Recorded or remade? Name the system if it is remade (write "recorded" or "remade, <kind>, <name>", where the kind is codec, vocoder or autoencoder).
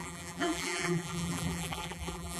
remade, vocoder, BigVGAN v2